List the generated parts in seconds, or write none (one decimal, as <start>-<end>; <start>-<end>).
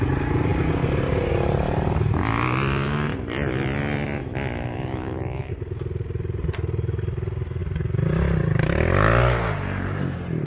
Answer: 4.2-5.5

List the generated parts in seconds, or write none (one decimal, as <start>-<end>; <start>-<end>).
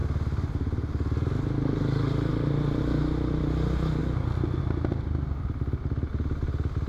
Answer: none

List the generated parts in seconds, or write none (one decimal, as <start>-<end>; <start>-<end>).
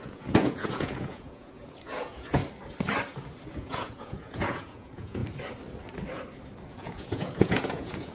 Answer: 0.0-2.4; 3.5-5.2; 6.8-8.1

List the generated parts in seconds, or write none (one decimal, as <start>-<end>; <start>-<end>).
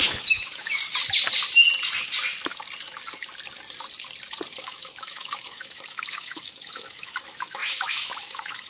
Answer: 0.0-0.8; 4.5-8.7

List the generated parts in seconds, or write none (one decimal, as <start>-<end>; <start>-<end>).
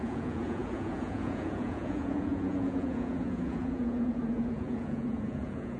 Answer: 0.0-5.8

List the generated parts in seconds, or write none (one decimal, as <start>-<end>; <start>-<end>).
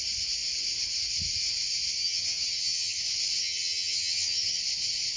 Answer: 2.0-3.0; 3.4-4.6